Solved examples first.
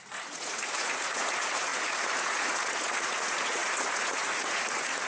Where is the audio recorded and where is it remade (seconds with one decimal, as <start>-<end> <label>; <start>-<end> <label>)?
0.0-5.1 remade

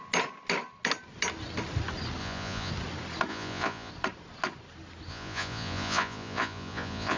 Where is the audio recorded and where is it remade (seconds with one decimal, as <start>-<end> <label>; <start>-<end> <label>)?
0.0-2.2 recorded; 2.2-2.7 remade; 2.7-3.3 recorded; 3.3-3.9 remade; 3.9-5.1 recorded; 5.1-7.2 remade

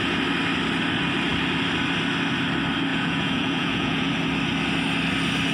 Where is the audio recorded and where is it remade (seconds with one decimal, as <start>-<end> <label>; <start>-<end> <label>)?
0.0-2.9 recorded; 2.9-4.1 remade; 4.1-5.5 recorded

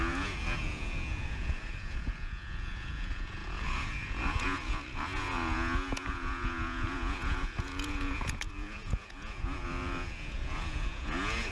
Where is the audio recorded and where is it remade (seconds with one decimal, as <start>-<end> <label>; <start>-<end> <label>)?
0.0-11.5 remade

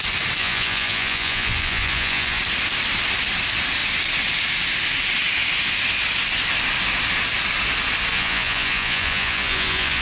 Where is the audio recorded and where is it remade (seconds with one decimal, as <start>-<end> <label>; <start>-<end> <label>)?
0.0-0.4 recorded; 0.4-2.4 remade; 2.4-8.1 recorded; 8.1-10.0 remade

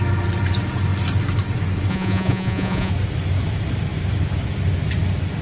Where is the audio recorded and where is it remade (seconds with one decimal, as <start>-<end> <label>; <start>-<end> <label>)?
0.0-1.9 recorded; 1.9-2.9 remade; 2.9-5.4 recorded